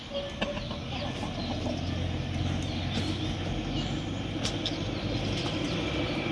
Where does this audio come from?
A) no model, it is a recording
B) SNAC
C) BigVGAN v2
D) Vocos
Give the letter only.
A